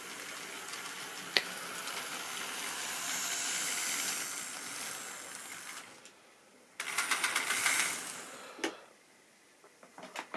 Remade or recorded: recorded